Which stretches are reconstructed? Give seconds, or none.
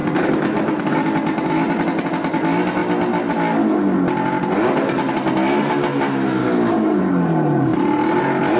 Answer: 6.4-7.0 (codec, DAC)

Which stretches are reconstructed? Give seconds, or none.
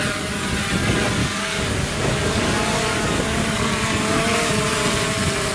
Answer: 1.2-4.5 (codec, DAC)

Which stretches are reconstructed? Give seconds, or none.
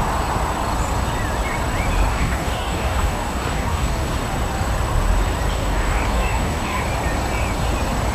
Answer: 2.1-4.1 (codec, DAC); 5.5-6.8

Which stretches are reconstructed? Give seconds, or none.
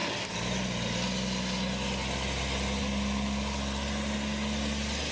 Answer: none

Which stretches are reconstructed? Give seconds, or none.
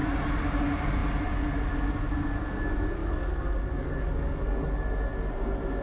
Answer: 3.0-4.4 (codec, DAC)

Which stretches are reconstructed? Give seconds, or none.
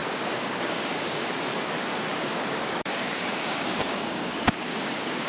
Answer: 0.0-1.3 (codec, DAC); 2.1-5.3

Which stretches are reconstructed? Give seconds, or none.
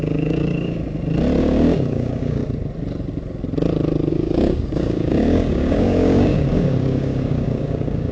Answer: 0.0-0.8 (codec, DAC); 1.4-2.4; 4.1-8.1